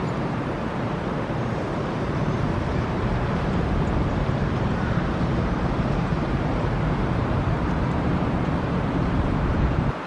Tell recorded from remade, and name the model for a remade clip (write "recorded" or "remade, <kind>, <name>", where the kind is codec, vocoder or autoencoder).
remade, vocoder, BigVGAN v2